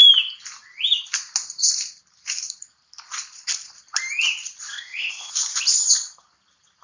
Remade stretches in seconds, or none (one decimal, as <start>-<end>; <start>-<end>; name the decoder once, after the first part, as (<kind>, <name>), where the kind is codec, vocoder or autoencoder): 4.7-5.3 (codec, ZipCodec)